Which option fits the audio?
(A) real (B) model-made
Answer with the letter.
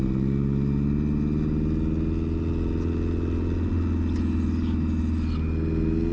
A